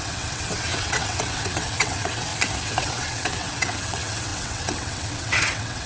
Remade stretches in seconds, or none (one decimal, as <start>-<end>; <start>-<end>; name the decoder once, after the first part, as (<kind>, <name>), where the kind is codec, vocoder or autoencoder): 0.0-2.3 (vocoder, WaveNeXt); 2.8-5.9